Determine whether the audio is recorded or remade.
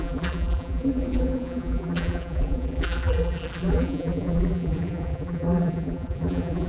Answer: remade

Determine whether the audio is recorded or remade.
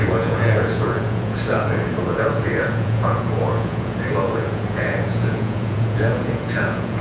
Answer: remade